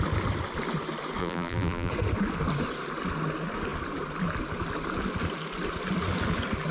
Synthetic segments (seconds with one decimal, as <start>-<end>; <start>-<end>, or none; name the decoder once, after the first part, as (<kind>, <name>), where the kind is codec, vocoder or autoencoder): 1.2-1.9 (vocoder, BigVGAN v2)